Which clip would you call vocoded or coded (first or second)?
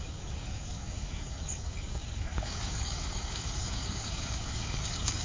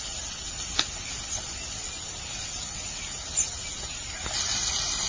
first